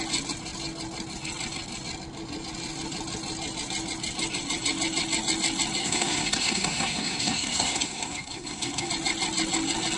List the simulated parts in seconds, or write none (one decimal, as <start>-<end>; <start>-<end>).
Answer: 5.8-8.9